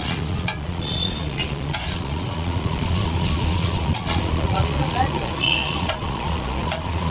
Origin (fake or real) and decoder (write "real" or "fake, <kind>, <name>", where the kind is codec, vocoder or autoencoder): fake, vocoder, Vocos